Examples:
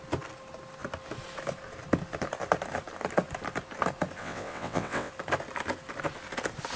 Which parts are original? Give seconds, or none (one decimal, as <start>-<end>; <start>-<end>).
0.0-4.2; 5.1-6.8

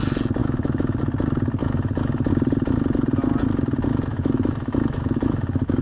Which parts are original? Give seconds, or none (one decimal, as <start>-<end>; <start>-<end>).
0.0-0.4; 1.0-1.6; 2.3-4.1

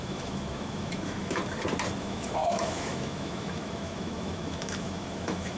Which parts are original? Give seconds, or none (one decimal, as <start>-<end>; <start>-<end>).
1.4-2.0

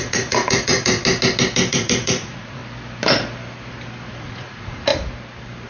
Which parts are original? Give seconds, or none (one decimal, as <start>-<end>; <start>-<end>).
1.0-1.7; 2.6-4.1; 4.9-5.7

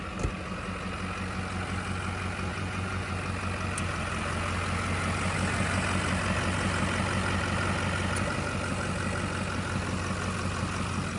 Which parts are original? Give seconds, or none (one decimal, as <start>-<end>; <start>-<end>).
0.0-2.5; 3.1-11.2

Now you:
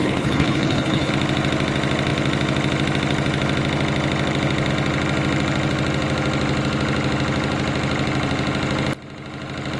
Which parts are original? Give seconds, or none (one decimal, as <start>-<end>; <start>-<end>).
1.1-9.8

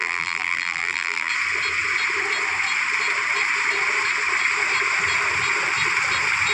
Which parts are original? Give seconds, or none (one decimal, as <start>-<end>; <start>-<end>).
1.3-6.5

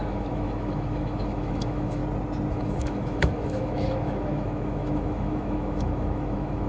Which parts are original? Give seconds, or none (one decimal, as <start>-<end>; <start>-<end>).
2.0-2.5